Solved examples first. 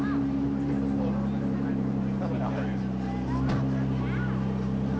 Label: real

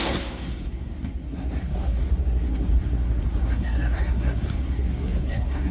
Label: fake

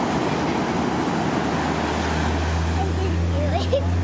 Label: real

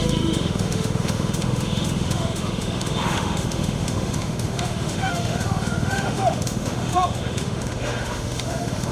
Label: fake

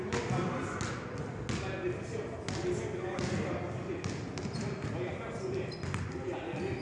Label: real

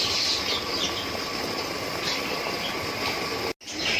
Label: real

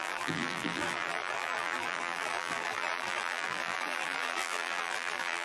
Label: fake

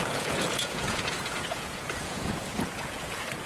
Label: fake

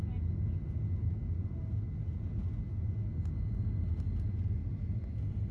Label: real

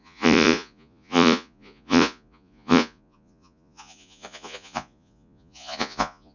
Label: fake